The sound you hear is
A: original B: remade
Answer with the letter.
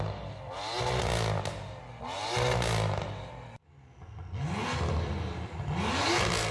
A